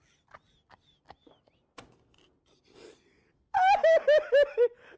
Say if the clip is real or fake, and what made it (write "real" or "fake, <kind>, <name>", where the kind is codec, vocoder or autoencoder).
real